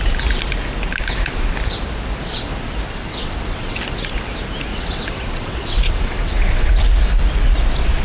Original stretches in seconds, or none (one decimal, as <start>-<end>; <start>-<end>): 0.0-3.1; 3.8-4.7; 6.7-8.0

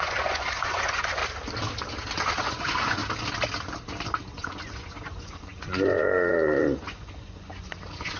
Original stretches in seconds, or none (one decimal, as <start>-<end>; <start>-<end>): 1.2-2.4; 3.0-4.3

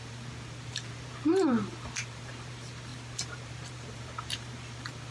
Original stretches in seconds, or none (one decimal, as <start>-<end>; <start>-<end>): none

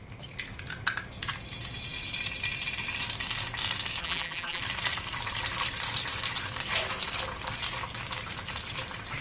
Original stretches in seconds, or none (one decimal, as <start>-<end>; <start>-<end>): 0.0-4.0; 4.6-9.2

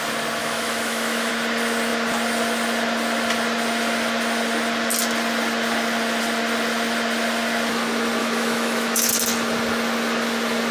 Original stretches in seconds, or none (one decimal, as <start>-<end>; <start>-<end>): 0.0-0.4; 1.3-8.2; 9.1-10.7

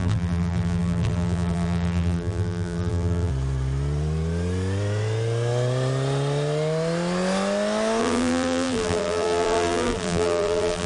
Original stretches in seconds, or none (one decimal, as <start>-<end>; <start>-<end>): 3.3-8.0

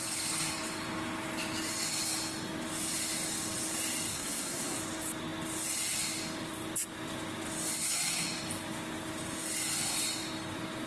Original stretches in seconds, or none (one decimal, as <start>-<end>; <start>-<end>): 0.0-4.1; 4.8-10.9